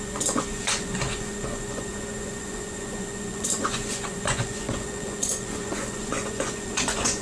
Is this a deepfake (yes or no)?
yes